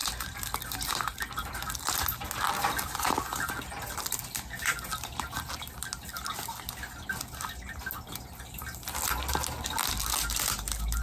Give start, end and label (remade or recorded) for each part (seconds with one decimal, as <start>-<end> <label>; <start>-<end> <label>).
0.0-11.0 recorded